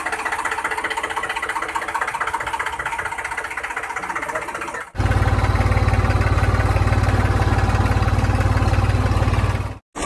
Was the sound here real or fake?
real